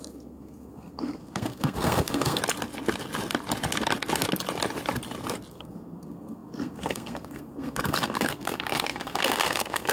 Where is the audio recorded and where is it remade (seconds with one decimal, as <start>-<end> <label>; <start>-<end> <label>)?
0.0-2.4 remade; 2.4-5.5 recorded; 5.5-9.9 remade